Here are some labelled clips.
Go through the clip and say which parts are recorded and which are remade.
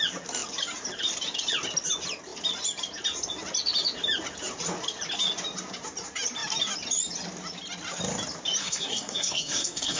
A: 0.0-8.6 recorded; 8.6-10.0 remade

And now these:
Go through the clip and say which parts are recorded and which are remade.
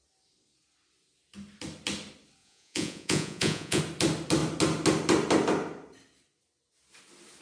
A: 0.0-2.4 recorded; 2.4-3.8 remade; 3.8-7.4 recorded